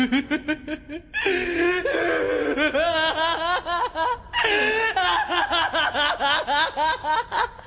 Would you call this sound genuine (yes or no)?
yes